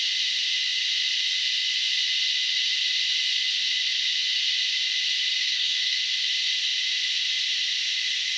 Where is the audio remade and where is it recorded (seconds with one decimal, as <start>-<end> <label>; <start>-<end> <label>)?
0.0-5.4 recorded; 5.4-6.0 remade; 6.0-8.4 recorded